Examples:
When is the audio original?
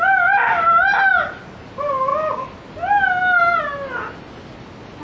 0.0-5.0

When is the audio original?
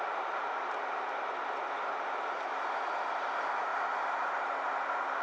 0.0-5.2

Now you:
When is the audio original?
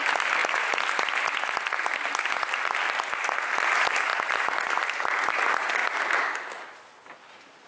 0.0-7.7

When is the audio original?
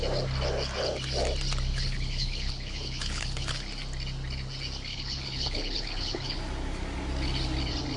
0.0-1.7; 3.5-4.9; 6.4-8.0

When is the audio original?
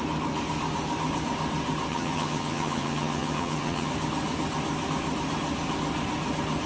0.0-1.9; 3.9-6.7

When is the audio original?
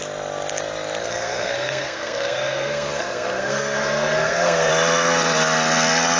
0.0-1.0; 4.7-6.2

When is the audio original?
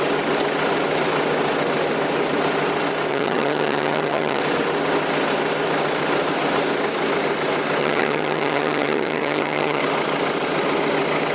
0.0-3.1; 4.4-7.8; 9.8-11.3